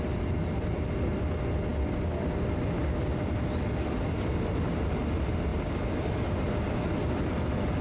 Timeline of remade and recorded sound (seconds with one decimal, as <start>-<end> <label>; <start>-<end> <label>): 0.0-5.5 recorded; 5.5-6.5 remade; 6.5-7.8 recorded